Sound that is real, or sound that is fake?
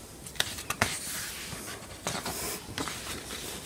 real